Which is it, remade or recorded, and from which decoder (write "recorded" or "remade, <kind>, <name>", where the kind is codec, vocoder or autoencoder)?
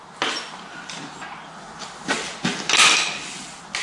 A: recorded